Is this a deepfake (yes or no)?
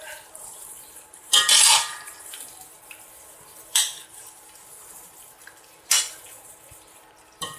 yes